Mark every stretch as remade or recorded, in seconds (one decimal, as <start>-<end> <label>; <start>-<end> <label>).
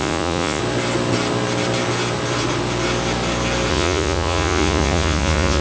0.0-0.6 remade; 0.6-3.7 recorded; 3.7-5.6 remade